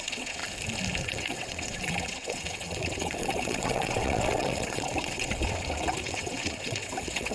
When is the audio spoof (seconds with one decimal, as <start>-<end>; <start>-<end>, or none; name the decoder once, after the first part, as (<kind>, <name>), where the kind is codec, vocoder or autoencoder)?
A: 0.0-0.4 (vocoder, WaveNeXt); 1.0-7.3